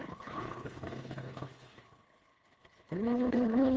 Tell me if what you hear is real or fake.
fake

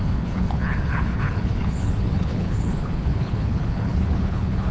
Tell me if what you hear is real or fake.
fake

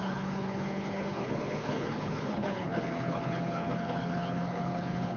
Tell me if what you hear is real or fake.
fake